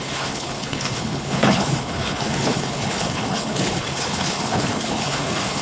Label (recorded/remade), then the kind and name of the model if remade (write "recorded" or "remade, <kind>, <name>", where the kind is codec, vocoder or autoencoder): remade, codec, HILCodec